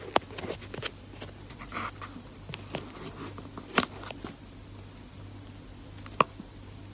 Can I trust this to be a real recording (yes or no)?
yes